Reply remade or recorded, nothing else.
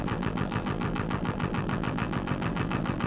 remade